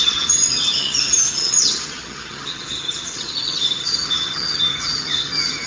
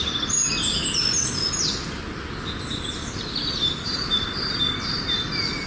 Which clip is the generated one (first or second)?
first